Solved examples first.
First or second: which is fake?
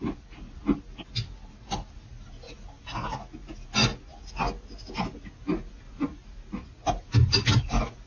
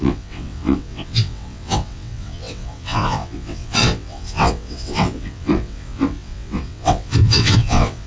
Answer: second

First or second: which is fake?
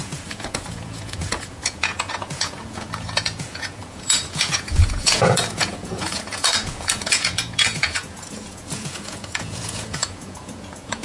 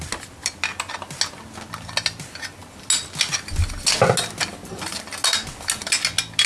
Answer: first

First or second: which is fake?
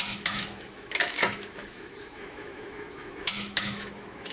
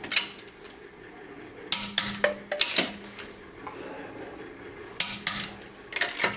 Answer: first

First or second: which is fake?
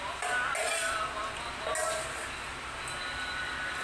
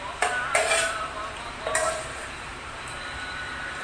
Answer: second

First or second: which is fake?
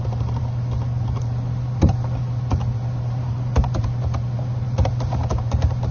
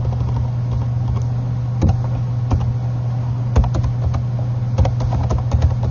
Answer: first